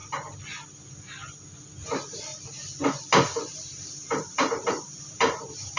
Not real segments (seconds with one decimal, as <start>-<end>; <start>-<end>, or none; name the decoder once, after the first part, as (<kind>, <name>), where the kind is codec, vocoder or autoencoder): 1.9-2.3 (vocoder, BigVGAN v2); 3.2-5.8